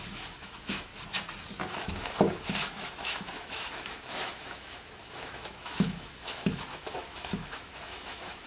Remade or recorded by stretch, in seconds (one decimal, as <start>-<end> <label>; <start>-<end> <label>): 0.0-0.9 remade; 0.9-1.8 recorded; 1.8-8.5 remade